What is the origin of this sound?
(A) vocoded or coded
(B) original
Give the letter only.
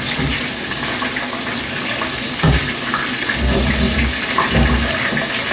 B